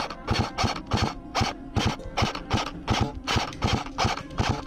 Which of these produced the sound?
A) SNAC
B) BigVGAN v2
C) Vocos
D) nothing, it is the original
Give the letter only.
D